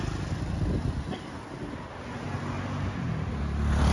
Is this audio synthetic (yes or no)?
no